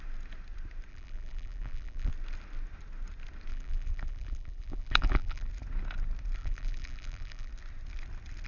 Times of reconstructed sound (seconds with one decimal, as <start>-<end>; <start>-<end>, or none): 0.9-2.1; 3.5-5.5; 6.4-7.5